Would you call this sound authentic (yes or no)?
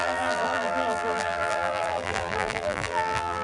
no